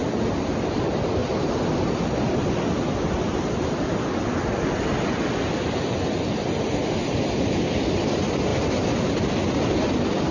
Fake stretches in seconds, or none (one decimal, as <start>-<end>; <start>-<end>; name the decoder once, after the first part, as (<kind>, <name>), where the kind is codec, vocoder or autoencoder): none